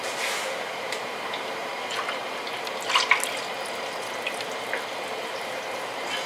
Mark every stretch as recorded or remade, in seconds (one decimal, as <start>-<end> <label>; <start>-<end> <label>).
0.0-1.7 remade; 1.7-5.2 recorded; 5.2-6.3 remade